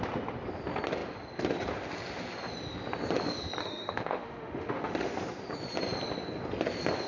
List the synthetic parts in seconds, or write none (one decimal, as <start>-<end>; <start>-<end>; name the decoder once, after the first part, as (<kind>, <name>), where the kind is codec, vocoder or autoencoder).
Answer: 3.6-5.1 (autoencoder, DAC-VAE)